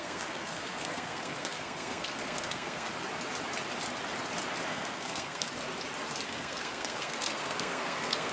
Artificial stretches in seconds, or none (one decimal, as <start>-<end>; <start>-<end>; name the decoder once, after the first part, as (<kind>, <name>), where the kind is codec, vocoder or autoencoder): 0.0-2.9 (codec, SNAC); 4.7-5.5; 6.3-8.3